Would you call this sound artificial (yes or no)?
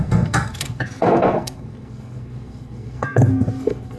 yes